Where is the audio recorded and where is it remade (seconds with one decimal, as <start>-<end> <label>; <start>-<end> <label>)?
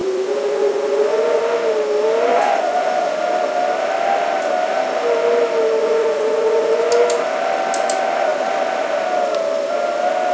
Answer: 0.0-1.4 remade; 1.4-2.3 recorded; 2.3-3.1 remade; 3.1-5.8 recorded; 5.8-6.9 remade; 6.9-10.3 recorded